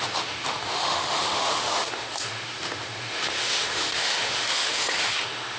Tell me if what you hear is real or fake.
fake